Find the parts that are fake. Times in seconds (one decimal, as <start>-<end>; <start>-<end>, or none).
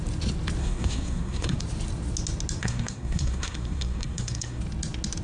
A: 0.6-1.6; 2.6-4.6